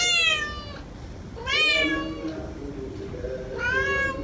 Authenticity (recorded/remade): recorded